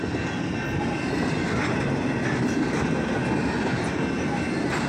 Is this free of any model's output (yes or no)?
yes